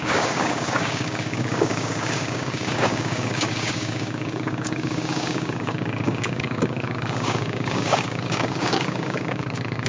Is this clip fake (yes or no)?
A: yes